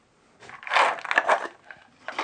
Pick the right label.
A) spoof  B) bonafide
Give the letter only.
B